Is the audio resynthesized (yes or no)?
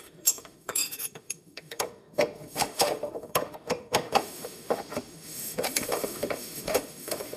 yes